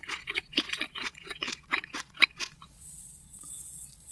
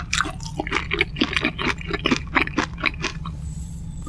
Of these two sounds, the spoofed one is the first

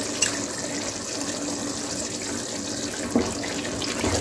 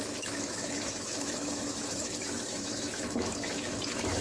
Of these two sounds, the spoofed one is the second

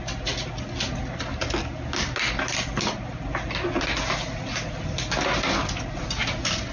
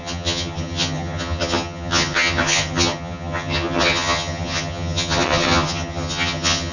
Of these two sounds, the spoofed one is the second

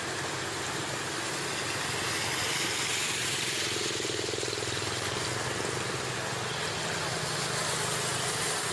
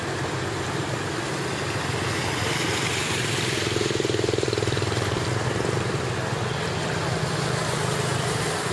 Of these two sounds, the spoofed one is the second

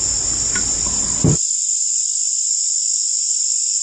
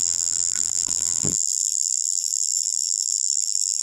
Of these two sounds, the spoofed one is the second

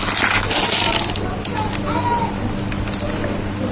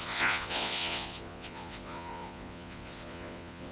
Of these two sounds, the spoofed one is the second